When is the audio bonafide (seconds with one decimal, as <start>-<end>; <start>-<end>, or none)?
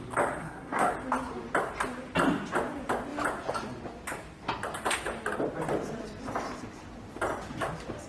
0.0-0.4; 0.9-8.1